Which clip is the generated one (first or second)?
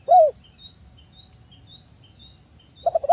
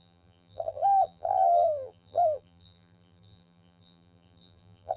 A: second